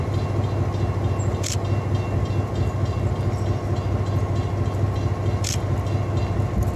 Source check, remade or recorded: recorded